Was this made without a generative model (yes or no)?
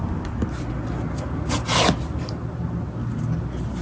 yes